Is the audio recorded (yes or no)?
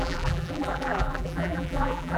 no